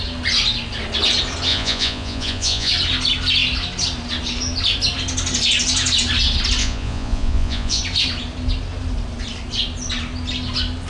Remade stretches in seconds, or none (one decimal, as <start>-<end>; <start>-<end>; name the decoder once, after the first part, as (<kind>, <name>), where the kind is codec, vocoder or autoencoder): 1.5-2.7 (vocoder, Vocos); 6.6-7.8